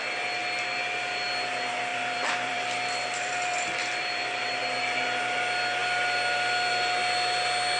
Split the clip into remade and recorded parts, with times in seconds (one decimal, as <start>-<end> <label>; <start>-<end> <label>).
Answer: 0.0-1.9 recorded; 1.9-4.4 remade; 4.4-7.8 recorded